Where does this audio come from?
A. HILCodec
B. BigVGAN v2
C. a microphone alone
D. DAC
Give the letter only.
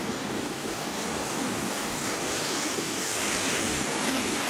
D